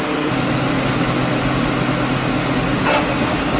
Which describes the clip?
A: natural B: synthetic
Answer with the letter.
A